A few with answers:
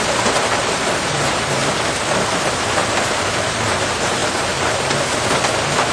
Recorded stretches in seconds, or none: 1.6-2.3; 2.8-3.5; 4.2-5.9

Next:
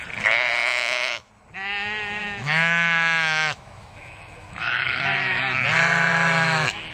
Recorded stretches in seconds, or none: 0.0-0.6; 1.3-2.2; 5.4-6.1

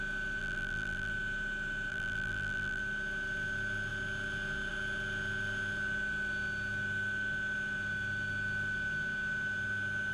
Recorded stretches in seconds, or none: 0.0-0.4; 1.1-1.9; 2.8-10.1